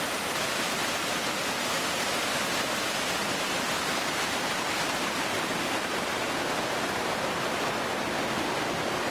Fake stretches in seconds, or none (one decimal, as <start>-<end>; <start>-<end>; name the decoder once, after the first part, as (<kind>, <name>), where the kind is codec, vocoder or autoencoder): 3.2-3.8 (vocoder, BigVGAN v2)